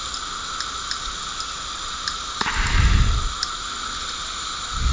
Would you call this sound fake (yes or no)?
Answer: no